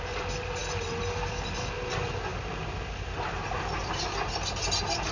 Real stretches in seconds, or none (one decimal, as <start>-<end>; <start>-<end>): 0.0-5.1